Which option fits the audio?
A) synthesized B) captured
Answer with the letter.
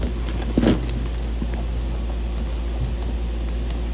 B